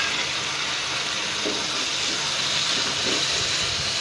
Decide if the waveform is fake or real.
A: real